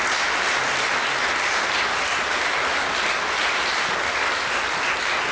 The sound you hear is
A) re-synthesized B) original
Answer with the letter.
B